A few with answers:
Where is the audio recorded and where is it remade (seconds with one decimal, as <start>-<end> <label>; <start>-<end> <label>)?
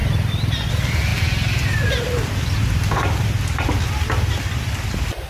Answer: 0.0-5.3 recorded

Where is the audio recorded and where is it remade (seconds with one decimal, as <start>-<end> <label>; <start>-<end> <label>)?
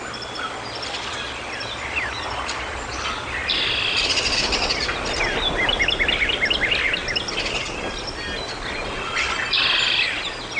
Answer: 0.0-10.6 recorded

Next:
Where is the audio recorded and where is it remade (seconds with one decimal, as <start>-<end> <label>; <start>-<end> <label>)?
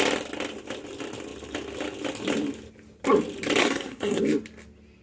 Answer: 0.0-3.6 recorded; 3.6-4.2 remade; 4.2-5.0 recorded